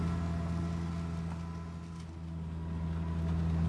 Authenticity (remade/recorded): recorded